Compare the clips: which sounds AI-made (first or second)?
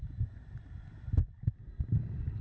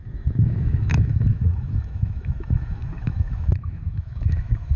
second